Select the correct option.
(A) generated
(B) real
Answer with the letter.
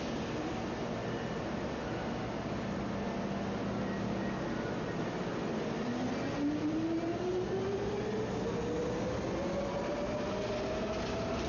B